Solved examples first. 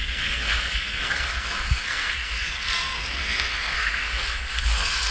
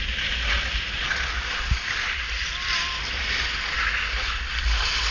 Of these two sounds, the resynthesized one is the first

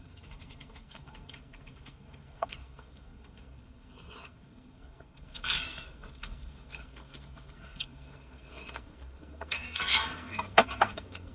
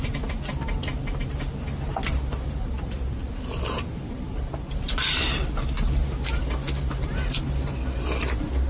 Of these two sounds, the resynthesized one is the first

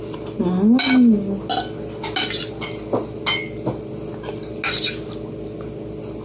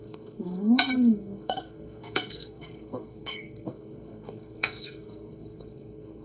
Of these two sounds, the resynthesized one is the second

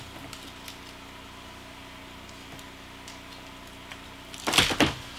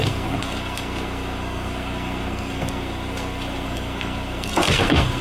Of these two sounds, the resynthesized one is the second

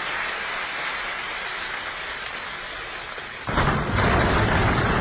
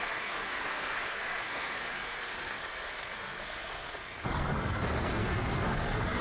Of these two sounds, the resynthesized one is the second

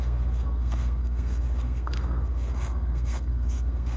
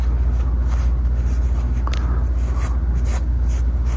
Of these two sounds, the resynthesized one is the first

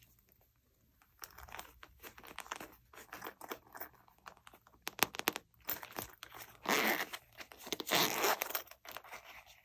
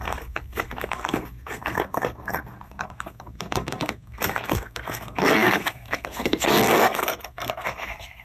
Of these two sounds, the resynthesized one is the second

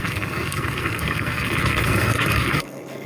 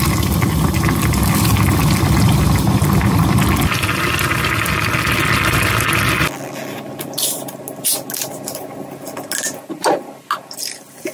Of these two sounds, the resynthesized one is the first